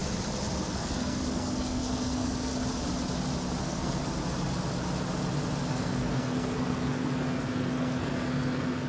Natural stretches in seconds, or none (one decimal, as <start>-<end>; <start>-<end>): 0.0-0.6; 2.5-3.6; 4.0-5.7